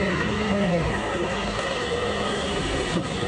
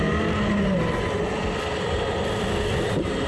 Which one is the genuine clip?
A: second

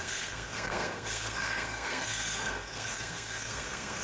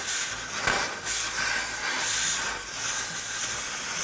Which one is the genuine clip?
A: second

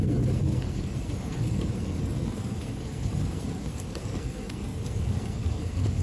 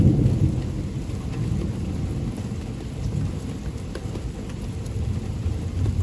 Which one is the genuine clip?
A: second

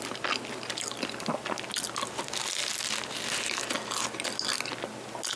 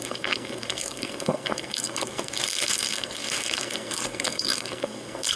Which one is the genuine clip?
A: first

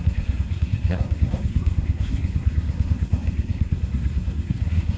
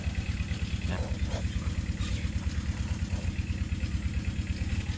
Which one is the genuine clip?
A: second